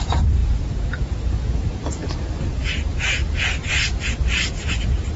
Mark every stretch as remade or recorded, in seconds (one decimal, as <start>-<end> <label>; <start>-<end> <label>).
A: 0.0-2.0 remade; 2.0-5.2 recorded